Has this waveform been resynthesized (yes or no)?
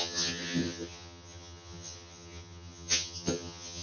yes